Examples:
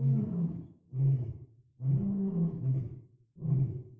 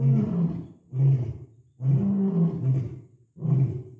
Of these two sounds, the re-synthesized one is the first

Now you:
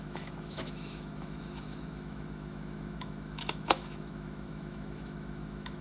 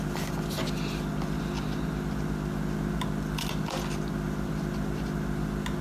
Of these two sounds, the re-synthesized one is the first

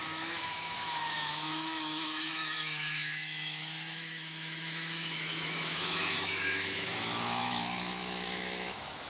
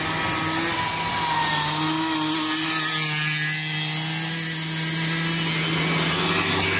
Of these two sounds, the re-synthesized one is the first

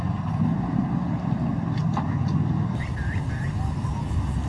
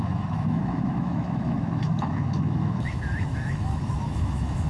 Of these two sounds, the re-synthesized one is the second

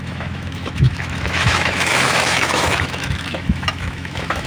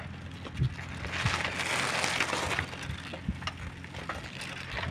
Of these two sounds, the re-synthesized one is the first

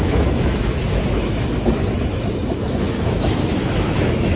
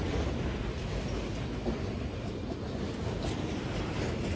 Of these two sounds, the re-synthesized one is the first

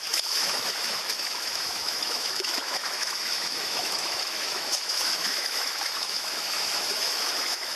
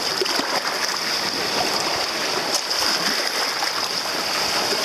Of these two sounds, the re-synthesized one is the first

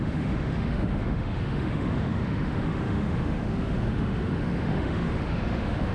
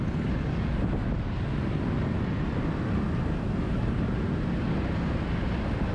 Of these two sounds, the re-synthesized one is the first